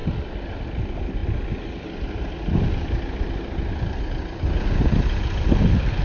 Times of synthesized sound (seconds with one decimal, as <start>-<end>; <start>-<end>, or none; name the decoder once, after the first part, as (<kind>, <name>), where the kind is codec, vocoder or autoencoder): none